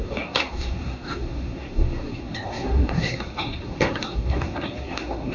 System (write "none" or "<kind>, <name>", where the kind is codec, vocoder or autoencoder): codec, SNAC